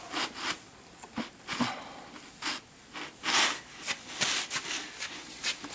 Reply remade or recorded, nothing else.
recorded